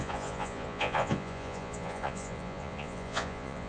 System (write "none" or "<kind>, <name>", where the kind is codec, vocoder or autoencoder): vocoder, Vocos